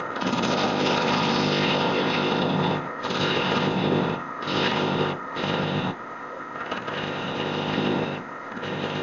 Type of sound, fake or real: fake